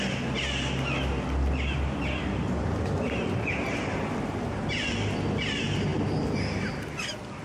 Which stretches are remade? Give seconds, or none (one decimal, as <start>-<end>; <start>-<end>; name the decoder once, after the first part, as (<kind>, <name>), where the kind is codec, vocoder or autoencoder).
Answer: none